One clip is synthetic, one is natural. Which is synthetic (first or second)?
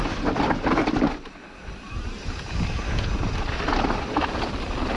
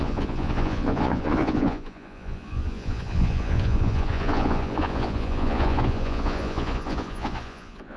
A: second